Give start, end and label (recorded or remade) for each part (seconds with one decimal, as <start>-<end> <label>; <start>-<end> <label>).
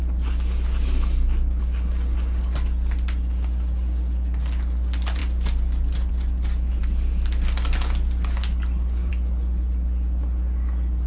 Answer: 0.0-11.1 recorded